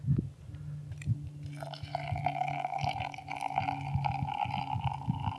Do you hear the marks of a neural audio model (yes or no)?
no